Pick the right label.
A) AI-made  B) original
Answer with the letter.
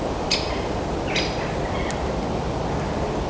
B